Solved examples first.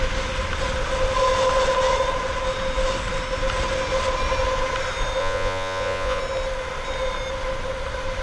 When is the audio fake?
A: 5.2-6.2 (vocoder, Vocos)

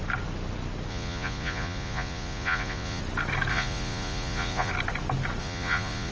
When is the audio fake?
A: 0.9-3.0 (vocoder, Vocos); 3.5-4.7; 5.4-6.1

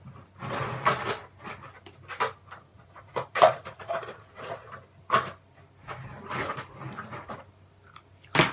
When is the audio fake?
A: 2.7-4.7 (vocoder, Vocos)

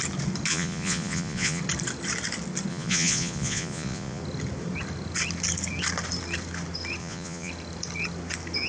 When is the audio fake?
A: 0.5-1.6 (vocoder, Vocos); 2.7-4.2; 7.0-7.5

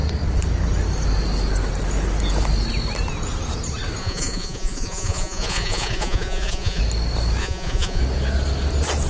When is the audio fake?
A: 4.0-6.8 (vocoder, Vocos); 7.4-8.0

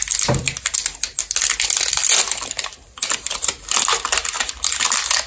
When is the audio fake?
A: none